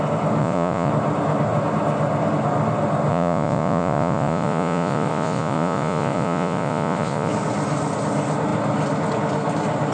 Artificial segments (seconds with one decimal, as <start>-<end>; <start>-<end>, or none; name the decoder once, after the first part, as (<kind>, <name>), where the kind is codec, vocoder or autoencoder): 0.4-0.9 (vocoder, Vocos); 3.1-7.3